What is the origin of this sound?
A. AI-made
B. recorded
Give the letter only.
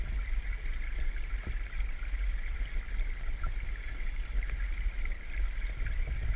B